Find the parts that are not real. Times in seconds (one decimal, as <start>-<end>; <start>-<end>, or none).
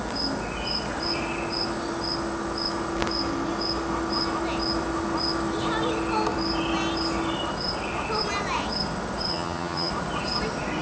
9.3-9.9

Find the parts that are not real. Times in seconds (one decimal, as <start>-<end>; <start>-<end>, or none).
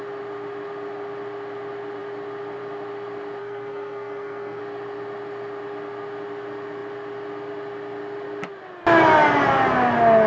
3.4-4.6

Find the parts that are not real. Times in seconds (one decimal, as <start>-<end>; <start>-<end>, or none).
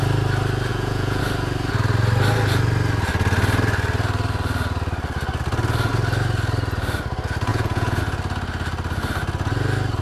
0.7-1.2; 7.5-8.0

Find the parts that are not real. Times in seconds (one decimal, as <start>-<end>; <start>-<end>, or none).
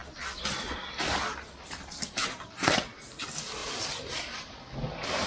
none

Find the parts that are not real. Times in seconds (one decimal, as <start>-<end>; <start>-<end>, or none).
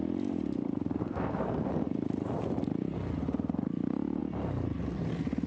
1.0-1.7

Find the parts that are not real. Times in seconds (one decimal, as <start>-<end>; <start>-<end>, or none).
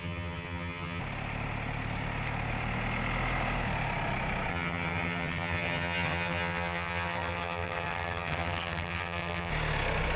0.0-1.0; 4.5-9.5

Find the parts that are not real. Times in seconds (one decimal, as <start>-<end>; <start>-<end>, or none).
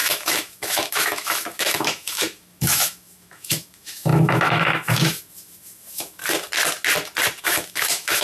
0.0-6.2; 7.4-8.2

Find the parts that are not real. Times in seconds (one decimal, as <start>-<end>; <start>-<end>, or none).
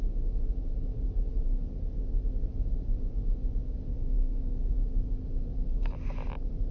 3.9-4.7